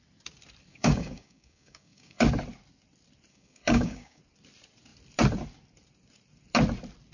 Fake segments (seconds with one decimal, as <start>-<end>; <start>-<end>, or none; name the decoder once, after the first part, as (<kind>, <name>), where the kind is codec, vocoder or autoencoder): 0.7-2.2 (codec, DAC); 3.3-4.2

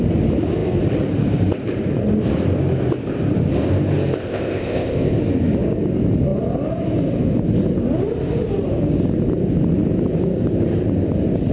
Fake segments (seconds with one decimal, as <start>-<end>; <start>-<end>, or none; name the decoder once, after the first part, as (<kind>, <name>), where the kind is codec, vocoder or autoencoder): 4.2-5.2 (codec, ZipCodec)

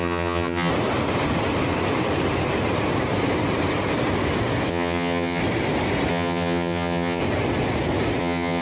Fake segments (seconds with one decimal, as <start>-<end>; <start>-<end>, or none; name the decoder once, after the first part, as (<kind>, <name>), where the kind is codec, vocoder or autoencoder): 0.0-0.7 (vocoder, HiFi-GAN); 4.7-5.4; 6.1-7.2; 8.2-8.6

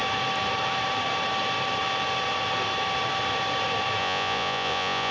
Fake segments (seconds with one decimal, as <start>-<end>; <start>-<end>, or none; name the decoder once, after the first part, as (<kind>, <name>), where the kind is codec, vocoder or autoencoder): 4.0-5.1 (vocoder, Vocos)

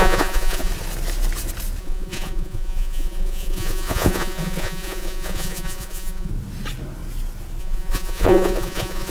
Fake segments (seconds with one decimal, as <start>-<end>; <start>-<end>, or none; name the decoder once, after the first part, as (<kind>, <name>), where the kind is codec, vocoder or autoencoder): 0.0-0.7 (vocoder, Vocos); 1.8-6.3; 7.6-9.1

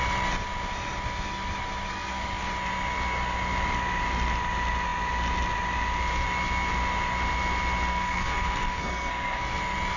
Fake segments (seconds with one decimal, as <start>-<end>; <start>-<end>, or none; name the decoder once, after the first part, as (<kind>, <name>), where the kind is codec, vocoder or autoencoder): 1.9-2.5 (codec, SNAC); 7.9-9.4